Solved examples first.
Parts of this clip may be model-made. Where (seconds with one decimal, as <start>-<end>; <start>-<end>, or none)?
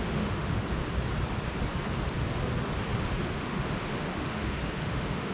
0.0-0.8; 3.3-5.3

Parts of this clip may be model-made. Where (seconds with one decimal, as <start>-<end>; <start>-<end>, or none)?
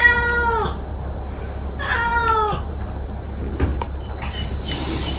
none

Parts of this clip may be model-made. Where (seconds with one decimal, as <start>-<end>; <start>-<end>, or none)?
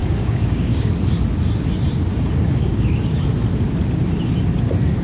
0.0-0.9; 2.1-3.0